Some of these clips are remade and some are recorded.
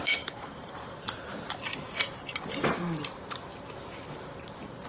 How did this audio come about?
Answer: remade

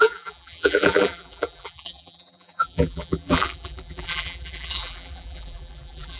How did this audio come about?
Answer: remade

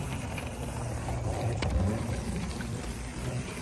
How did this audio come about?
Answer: remade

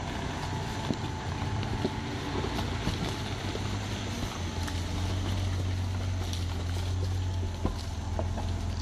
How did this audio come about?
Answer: recorded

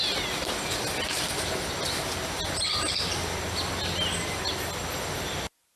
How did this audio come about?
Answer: recorded